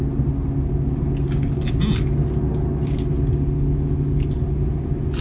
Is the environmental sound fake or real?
real